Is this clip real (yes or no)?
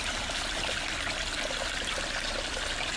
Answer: yes